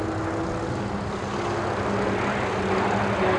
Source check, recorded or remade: recorded